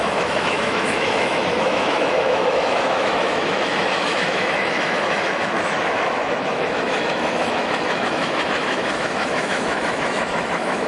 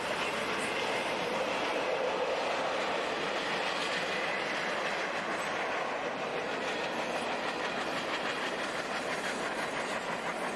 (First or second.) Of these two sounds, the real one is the second